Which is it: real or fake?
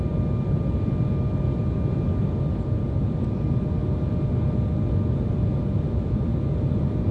real